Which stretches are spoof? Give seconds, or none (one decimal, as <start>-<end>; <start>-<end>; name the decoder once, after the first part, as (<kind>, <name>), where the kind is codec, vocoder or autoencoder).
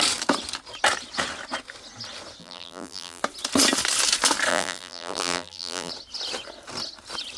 2.4-3.2 (vocoder, BigVGAN v2); 4.5-5.9